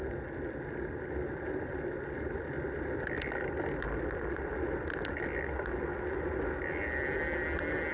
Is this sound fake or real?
real